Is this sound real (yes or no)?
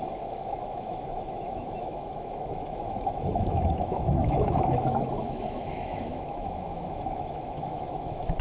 no